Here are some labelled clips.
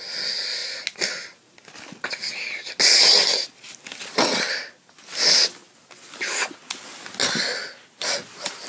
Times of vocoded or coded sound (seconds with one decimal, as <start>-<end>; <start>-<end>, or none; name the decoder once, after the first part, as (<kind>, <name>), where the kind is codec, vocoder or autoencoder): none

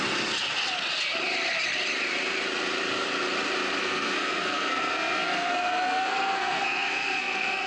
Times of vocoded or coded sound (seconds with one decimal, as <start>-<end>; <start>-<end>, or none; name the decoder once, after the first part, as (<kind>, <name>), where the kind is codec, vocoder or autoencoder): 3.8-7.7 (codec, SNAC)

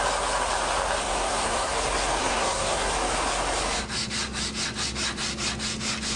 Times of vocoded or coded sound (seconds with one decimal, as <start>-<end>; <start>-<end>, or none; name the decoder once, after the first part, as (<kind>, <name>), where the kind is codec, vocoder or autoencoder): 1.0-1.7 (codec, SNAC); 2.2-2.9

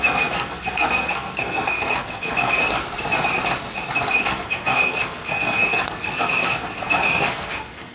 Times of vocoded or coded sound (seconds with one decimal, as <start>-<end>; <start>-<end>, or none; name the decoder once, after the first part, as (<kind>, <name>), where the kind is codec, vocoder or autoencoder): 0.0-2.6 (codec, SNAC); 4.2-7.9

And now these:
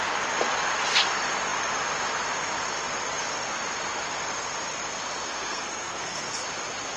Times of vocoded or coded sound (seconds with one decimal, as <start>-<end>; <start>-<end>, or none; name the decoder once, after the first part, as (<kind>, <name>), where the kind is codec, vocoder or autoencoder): 5.3-6.3 (codec, SNAC)